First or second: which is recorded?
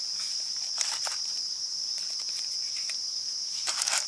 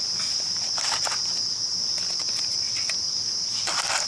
second